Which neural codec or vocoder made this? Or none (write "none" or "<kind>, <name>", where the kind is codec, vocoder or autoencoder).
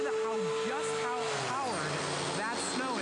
none